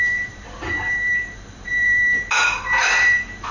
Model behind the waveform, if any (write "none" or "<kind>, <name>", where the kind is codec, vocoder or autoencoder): vocoder, BigVGAN v2